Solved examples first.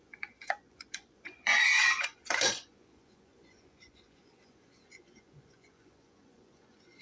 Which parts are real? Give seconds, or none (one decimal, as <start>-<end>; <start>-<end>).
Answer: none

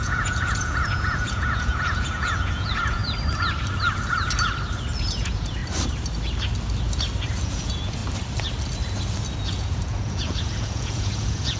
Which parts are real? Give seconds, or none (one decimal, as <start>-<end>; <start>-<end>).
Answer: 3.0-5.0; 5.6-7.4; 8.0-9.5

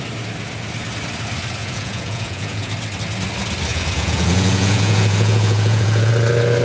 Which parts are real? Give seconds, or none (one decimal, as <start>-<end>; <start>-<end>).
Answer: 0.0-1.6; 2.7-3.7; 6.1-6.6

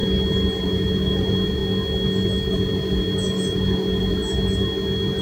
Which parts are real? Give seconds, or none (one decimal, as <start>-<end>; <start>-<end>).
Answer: 0.0-0.6; 1.6-2.5; 4.2-5.2

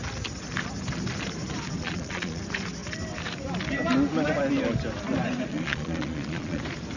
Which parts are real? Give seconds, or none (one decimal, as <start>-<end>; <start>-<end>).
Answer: 0.0-1.8; 2.4-5.5; 6.6-7.0